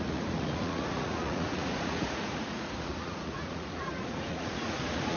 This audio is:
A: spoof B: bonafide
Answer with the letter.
A